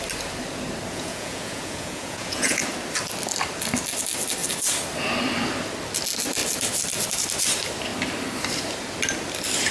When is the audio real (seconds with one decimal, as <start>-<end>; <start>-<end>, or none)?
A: 0.0-0.9; 2.6-9.7